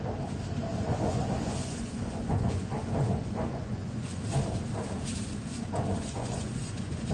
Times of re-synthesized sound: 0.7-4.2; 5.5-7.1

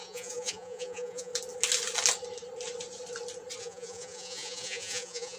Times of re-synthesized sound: 0.0-1.3; 3.6-5.4

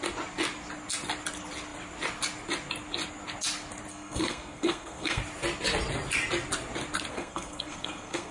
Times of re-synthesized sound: 3.9-5.2; 7.1-8.3

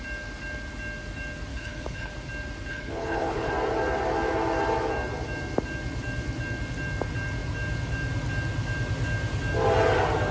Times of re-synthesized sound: 1.5-2.1; 2.7-3.5

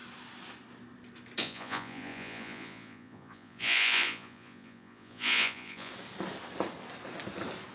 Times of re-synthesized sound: 1.4-5.9

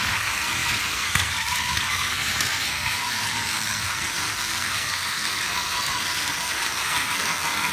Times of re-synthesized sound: 0.0-7.7

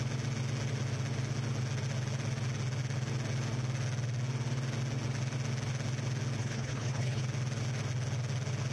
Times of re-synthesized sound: 6.4-7.2